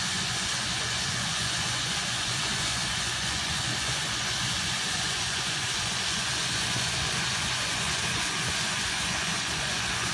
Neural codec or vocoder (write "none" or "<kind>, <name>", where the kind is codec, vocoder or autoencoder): vocoder, Vocos